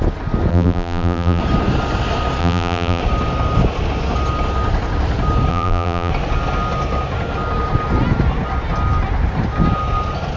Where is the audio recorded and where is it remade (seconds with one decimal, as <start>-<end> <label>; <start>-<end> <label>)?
0.0-0.5 recorded; 0.5-1.4 remade; 1.4-2.4 recorded; 2.4-3.0 remade; 3.0-5.5 recorded; 5.5-6.1 remade; 6.1-10.4 recorded